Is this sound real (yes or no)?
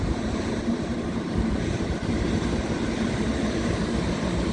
no